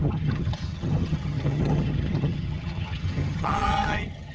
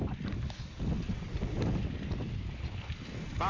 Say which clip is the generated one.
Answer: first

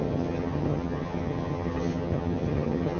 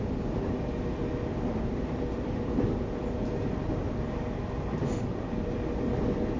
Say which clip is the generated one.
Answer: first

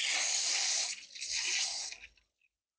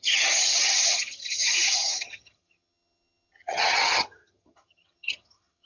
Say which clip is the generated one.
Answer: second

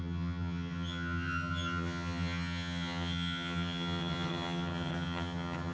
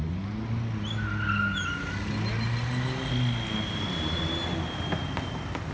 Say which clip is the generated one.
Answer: first